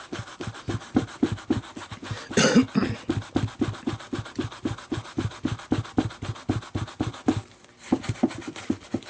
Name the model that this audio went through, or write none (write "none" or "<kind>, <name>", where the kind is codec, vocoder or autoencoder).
none